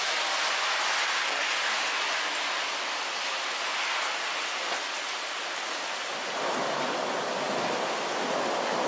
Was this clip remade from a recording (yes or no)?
no